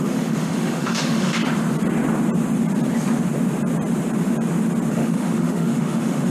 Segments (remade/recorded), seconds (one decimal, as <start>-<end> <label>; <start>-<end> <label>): 0.0-1.4 remade; 1.4-4.9 recorded; 4.9-6.3 remade